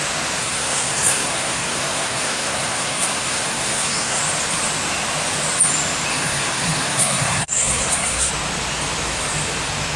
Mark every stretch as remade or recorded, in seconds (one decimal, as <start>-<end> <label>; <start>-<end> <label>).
0.0-0.4 recorded; 0.4-4.2 remade; 4.2-6.1 recorded; 6.1-8.3 remade; 8.3-10.0 recorded